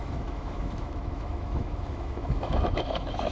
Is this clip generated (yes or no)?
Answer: yes